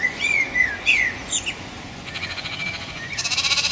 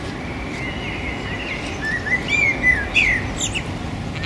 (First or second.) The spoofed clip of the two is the first